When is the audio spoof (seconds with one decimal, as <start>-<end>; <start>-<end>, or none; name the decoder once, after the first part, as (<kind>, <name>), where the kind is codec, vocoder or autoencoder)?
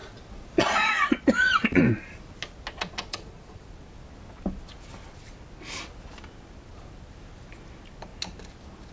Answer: 0.0-1.8 (vocoder, Vocos); 2.8-3.6